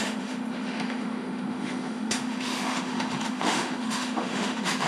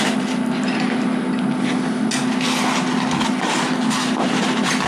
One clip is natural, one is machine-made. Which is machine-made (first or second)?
first